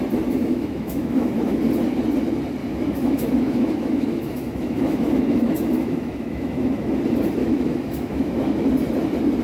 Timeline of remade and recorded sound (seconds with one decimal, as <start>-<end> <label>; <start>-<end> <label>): 0.0-0.4 recorded; 0.4-1.6 remade; 1.6-2.6 recorded; 2.6-7.0 remade; 7.0-7.4 recorded; 7.4-8.6 remade; 8.6-9.4 recorded